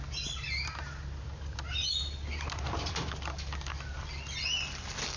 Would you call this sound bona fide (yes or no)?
yes